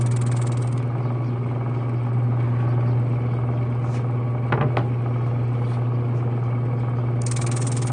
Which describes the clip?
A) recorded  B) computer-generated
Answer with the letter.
A